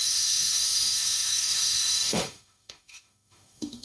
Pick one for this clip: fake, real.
fake